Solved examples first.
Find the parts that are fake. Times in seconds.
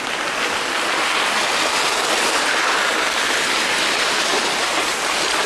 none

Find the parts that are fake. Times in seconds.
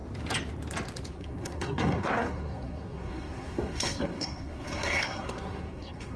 1.1-6.2 (codec, SNAC)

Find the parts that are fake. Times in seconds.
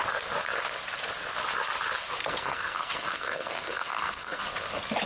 2.2-4.4 (codec, SNAC)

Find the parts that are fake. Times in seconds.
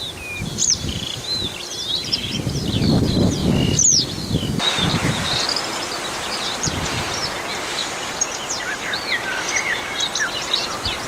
0.6-1.3 (vocoder, BigVGAN v2); 7.8-8.9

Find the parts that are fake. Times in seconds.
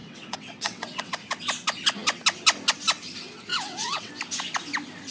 0.0-1.1 (vocoder, WaveNeXt); 3.5-4.1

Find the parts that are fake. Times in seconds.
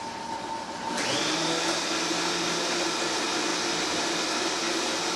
none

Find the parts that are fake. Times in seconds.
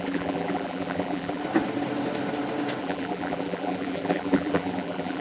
0.0-1.4 (vocoder, BigVGAN v2); 2.8-5.2